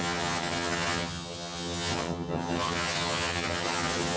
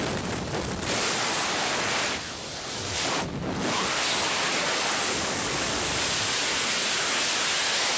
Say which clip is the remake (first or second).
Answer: first